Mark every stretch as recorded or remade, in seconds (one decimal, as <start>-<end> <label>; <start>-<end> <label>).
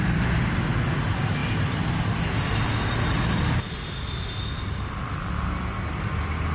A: 0.0-1.4 recorded; 1.4-2.2 remade; 2.2-6.5 recorded